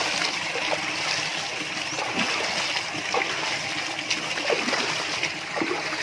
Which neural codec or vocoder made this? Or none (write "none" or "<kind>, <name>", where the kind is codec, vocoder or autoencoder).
none